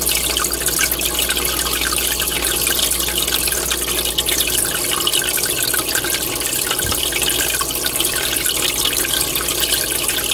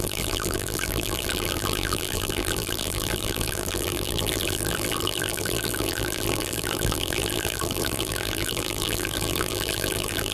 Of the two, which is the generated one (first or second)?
second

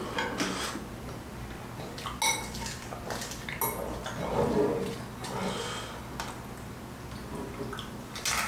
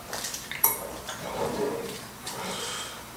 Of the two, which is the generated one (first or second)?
second